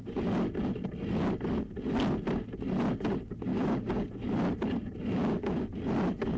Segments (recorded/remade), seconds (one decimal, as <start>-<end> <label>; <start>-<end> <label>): 0.0-3.5 recorded; 3.5-4.1 remade; 4.1-5.2 recorded; 5.2-5.8 remade; 5.8-6.4 recorded